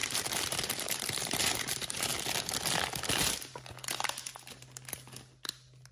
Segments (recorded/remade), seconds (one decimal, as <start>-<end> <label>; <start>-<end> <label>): 0.0-2.1 remade; 2.1-5.9 recorded

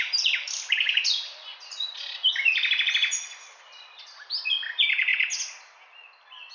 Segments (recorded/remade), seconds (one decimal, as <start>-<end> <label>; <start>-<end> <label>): 0.0-6.5 recorded

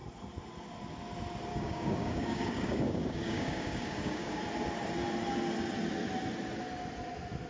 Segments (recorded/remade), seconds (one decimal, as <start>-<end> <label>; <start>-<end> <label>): 0.0-1.5 recorded; 1.5-4.4 remade; 4.4-7.5 recorded

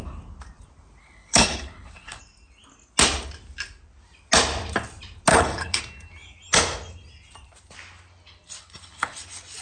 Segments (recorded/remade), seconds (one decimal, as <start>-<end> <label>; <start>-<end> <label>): 0.0-1.0 recorded; 1.0-2.2 remade; 2.2-5.3 recorded; 5.3-5.8 remade; 5.8-8.6 recorded; 8.6-9.2 remade; 9.2-9.6 recorded

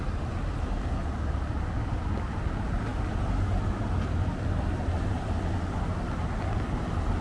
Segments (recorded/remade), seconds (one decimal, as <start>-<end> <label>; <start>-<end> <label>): 0.0-7.2 recorded

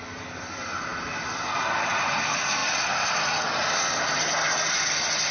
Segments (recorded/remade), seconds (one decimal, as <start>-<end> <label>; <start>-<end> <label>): 0.0-5.3 recorded

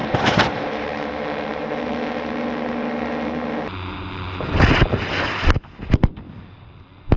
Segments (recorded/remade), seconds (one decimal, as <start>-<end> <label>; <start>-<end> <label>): 0.0-1.1 remade; 1.1-7.2 recorded

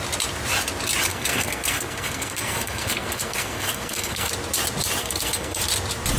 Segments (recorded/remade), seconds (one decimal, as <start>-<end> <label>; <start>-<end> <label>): 0.0-1.1 recorded; 1.1-4.3 remade; 4.3-5.0 recorded; 5.0-5.6 remade; 5.6-6.2 recorded